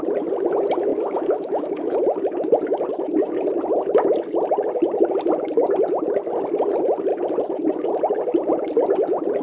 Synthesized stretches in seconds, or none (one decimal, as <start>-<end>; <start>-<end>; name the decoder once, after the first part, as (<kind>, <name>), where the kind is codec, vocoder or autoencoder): 0.9-2.0 (autoencoder, DAC-VAE)